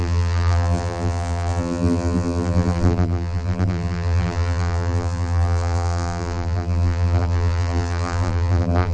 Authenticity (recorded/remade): remade